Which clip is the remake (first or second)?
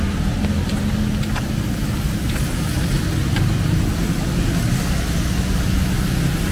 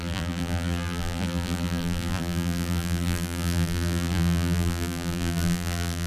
second